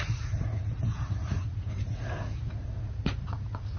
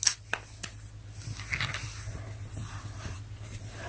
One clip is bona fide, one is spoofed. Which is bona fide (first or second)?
second